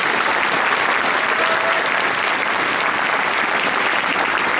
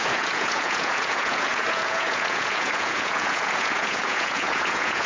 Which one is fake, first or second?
second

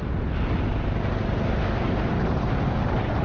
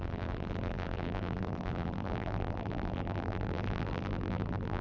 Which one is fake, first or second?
second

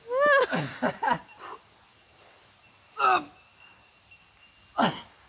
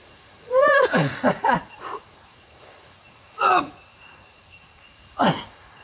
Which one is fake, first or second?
second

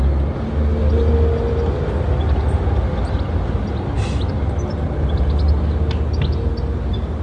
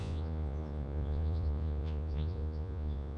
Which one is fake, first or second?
second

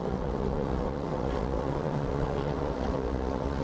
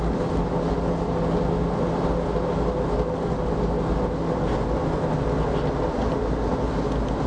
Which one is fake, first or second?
first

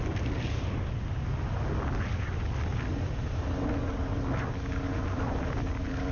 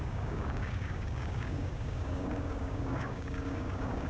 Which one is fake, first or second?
second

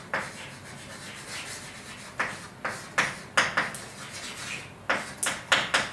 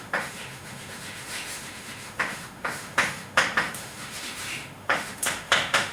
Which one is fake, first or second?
second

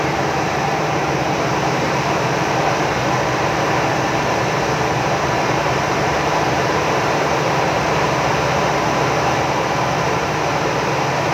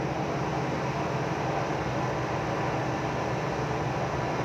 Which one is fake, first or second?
first